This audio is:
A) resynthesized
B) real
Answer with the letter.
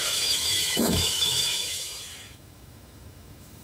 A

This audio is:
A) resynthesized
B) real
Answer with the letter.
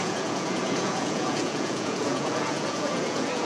A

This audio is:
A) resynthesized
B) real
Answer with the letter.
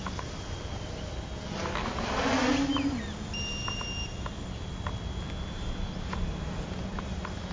B